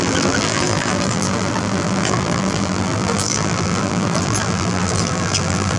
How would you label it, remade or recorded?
remade